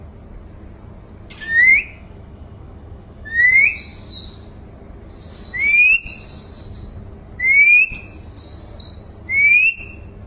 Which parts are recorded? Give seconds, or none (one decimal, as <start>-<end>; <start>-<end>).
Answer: 0.0-1.7; 3.4-10.3